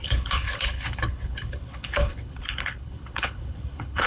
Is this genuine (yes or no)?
no